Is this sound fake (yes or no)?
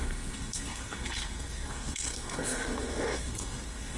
yes